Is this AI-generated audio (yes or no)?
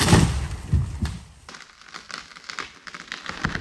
no